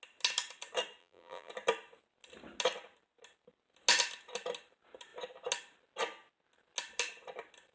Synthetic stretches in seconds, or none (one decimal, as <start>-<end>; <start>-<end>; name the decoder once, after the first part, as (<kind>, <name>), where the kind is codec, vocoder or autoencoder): 1.0-1.5 (vocoder, BigVGAN v2)